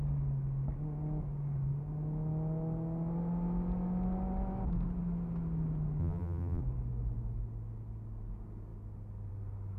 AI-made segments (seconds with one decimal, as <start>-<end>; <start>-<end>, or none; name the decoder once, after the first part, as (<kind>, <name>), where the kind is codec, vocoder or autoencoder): 6.0-6.6 (vocoder, BigVGAN v2)